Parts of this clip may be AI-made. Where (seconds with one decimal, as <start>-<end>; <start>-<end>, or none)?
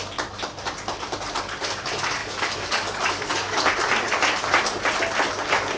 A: 2.2-3.7